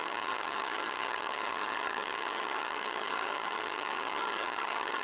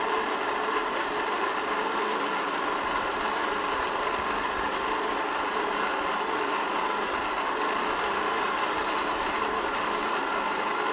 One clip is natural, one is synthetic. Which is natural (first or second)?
second